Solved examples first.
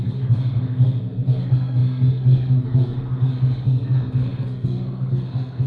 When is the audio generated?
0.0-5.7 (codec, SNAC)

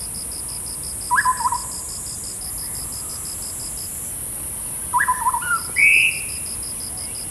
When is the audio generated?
none

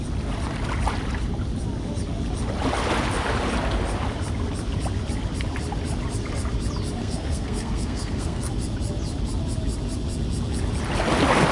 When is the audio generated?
7.0-8.5 (codec, SNAC)

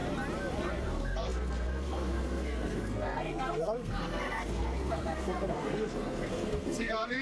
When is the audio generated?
0.7-7.2 (codec, SNAC)

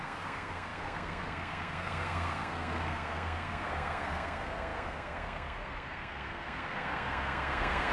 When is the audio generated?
0.0-7.9 (codec, SNAC)

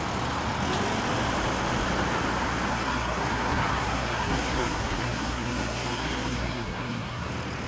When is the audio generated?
2.7-7.3 (codec, SNAC)

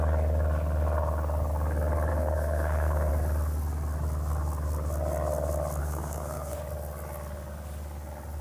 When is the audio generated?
2.1-3.1 (codec, SNAC); 5.8-6.6

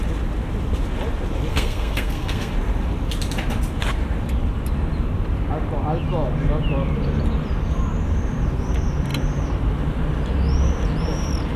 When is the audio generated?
1.5-2.5 (codec, SNAC)